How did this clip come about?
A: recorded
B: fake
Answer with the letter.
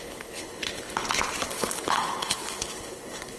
B